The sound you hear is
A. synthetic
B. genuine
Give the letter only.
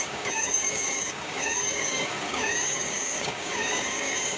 A